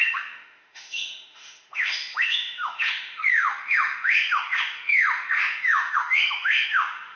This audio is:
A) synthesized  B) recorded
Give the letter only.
A